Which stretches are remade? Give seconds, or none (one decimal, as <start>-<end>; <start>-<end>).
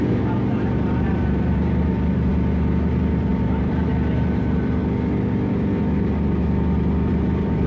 0.0-2.3; 2.9-4.8; 7.1-7.7